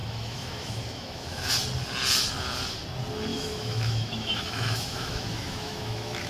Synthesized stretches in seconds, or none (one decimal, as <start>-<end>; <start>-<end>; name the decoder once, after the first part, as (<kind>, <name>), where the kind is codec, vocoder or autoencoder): 0.0-1.5 (autoencoder, DAC-VAE); 3.3-6.3